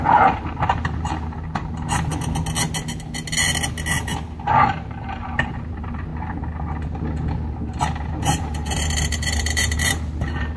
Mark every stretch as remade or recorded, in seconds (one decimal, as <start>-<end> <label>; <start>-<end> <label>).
0.0-2.1 remade; 2.1-4.5 recorded; 4.5-6.1 remade; 6.1-8.1 recorded; 8.1-10.6 remade